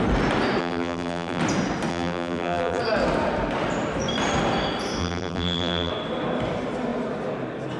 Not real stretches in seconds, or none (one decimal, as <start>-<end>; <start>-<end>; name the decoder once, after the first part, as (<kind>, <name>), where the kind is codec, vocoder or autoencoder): 0.6-1.4 (vocoder, BigVGAN v2); 1.9-2.8; 5.0-5.9